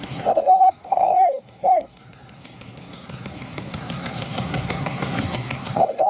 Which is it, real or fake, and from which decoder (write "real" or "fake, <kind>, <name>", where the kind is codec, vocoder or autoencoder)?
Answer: fake, codec, SNAC